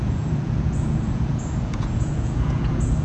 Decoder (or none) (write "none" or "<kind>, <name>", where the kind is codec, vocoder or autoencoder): vocoder, Vocos